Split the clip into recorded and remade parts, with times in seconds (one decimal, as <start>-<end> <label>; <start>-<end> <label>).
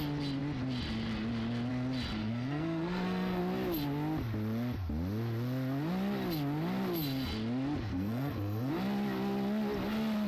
0.0-2.2 recorded; 2.2-3.4 remade; 3.4-7.9 recorded; 7.9-8.7 remade; 8.7-10.3 recorded